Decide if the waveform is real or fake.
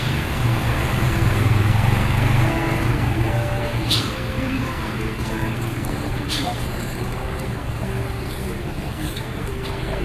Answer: fake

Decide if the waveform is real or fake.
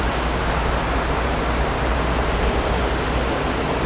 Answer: real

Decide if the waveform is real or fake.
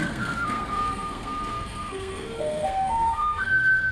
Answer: fake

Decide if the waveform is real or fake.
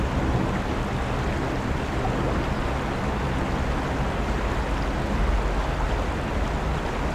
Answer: real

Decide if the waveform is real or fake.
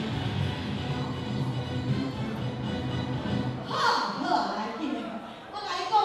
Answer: real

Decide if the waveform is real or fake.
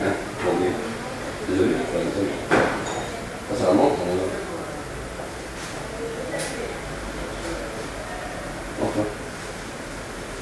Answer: real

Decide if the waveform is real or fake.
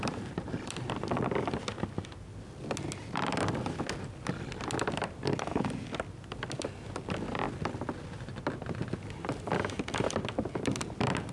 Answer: real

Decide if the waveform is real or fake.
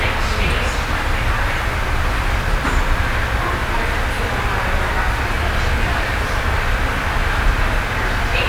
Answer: real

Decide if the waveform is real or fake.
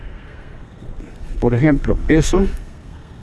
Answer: fake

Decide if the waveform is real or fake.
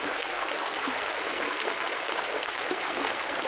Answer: fake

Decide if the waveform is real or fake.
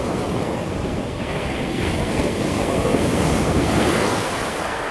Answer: fake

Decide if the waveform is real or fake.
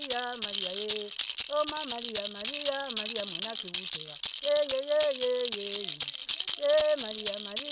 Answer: real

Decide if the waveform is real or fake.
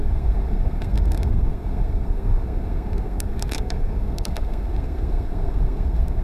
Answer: fake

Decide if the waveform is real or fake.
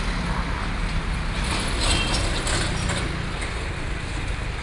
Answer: real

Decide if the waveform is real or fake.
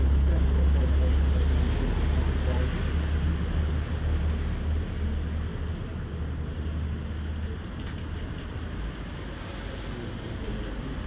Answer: real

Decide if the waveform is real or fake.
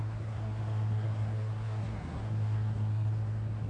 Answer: fake